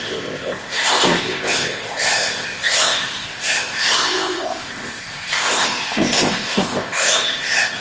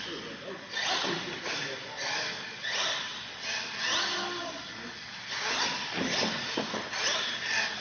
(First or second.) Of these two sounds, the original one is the second